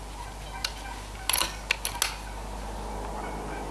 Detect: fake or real real